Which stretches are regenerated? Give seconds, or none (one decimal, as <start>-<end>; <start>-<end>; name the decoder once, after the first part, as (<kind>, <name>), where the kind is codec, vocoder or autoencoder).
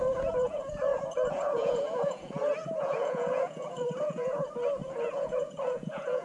0.0-6.2 (vocoder, Vocos)